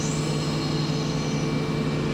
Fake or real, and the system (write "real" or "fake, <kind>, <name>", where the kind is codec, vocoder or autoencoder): real